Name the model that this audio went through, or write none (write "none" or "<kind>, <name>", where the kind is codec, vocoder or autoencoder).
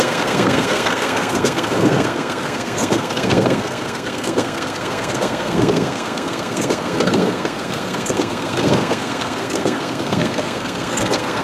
codec, SNAC